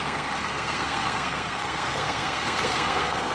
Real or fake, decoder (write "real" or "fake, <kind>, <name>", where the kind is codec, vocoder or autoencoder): fake, codec, SNAC